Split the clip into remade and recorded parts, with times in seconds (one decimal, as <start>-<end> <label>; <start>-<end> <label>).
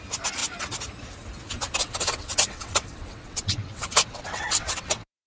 0.0-1.8 recorded; 1.8-5.3 remade